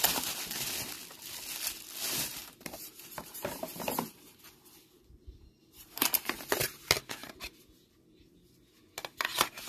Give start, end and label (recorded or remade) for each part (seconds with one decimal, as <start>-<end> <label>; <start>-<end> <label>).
0.0-2.3 recorded; 2.3-6.8 remade; 6.8-7.2 recorded; 7.2-8.0 remade; 8.0-9.7 recorded